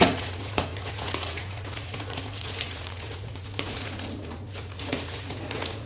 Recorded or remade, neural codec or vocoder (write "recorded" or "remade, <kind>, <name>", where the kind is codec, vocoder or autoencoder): remade, vocoder, Vocos